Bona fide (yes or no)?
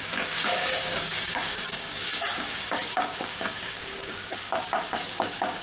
no